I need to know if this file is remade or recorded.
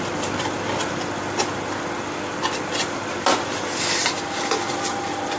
recorded